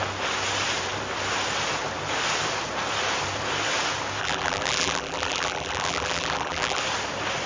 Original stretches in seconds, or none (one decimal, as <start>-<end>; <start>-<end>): 0.0-4.2; 6.8-7.5